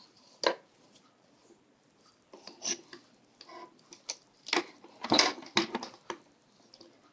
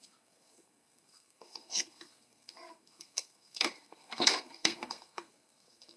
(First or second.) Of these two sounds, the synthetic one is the second